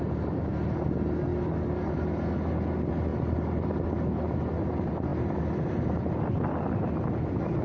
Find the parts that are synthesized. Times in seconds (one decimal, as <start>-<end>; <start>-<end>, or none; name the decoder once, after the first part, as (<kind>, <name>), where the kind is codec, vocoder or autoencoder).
none